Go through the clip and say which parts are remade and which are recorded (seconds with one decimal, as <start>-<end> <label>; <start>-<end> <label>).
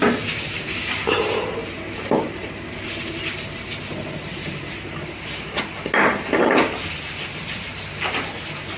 0.0-1.6 recorded; 1.6-3.7 remade; 3.7-8.8 recorded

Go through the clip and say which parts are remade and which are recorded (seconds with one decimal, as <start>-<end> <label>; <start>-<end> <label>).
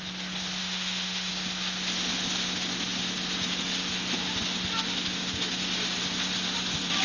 0.0-0.6 recorded; 0.6-1.3 remade; 1.3-7.0 recorded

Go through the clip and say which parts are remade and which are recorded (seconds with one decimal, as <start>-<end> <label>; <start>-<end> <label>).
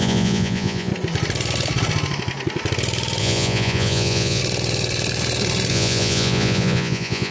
0.0-0.9 remade; 0.9-3.2 recorded; 3.2-4.4 remade; 4.4-5.7 recorded; 5.7-7.3 remade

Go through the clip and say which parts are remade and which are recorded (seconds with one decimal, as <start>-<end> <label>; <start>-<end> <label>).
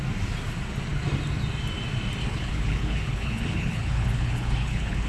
0.0-2.2 recorded; 2.2-5.1 remade